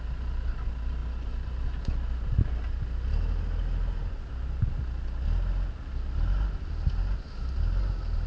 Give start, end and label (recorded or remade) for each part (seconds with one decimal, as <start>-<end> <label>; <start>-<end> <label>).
0.0-8.3 recorded